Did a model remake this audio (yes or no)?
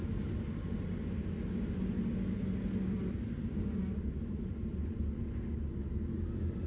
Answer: no